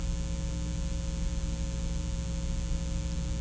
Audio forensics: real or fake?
real